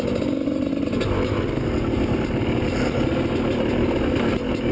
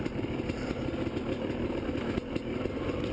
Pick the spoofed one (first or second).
second